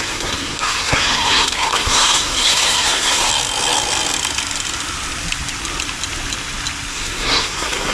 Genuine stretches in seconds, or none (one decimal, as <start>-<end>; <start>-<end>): 3.3-6.9